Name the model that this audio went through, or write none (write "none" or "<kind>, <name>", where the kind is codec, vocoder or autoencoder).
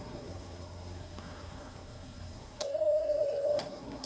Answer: codec, SNAC